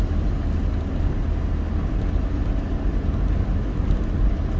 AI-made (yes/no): no